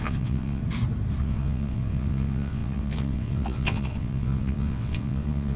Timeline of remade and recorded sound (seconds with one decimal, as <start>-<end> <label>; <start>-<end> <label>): 0.0-0.6 remade; 0.6-1.2 recorded; 1.2-5.6 remade